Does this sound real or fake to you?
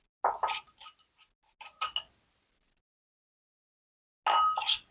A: real